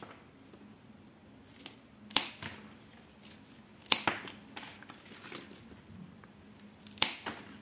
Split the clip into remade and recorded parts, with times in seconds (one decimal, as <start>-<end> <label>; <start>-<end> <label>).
0.0-7.6 recorded